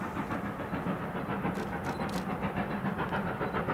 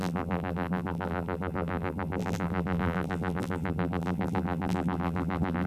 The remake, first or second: second